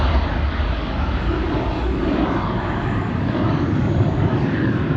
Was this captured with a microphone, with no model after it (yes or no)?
no